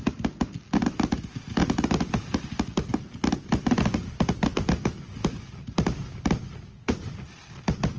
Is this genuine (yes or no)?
yes